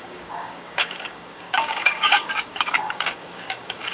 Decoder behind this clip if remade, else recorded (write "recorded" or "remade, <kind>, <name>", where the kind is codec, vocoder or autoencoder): remade, codec, DAC